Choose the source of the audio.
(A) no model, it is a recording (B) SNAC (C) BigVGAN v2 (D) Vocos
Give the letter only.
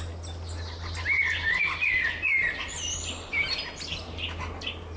A